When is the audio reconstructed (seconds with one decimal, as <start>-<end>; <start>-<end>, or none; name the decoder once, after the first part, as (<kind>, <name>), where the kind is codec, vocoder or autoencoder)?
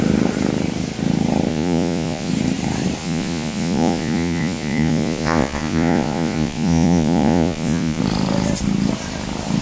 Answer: 1.5-2.3 (vocoder, Vocos); 3.0-8.0